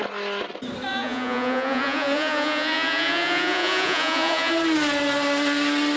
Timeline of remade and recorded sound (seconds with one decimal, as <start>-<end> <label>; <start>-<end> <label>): 0.0-0.9 recorded; 0.9-4.5 remade; 4.5-6.0 recorded